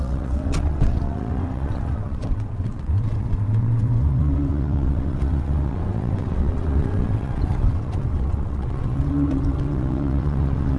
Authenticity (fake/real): fake